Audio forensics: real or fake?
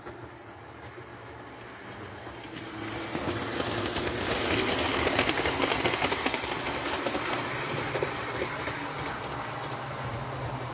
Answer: real